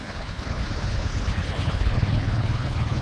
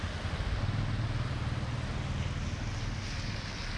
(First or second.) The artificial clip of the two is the first